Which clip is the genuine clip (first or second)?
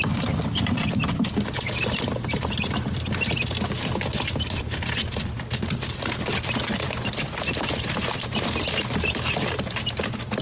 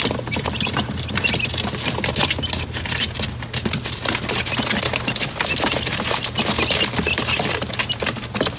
second